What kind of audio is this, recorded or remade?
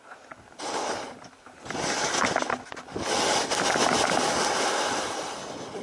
recorded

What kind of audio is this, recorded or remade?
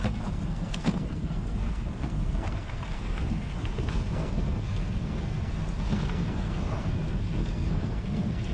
remade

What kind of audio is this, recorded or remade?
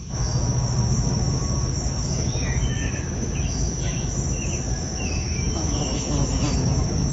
remade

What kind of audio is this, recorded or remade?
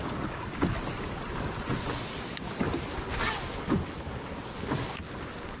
recorded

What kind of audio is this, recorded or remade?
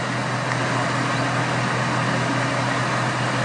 recorded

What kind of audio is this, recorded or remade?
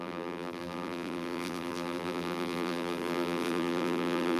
remade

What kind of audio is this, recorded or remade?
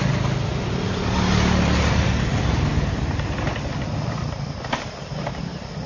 recorded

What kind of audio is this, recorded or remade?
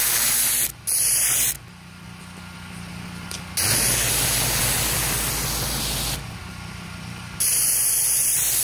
recorded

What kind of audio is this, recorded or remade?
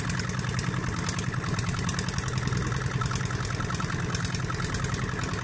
recorded